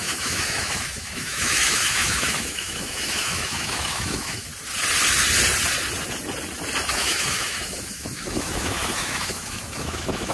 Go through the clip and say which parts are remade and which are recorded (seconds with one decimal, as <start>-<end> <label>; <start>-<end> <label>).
0.0-4.5 remade; 4.5-6.9 recorded; 6.9-10.3 remade